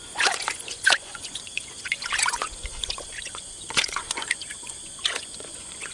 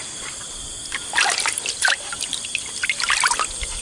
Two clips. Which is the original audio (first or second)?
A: second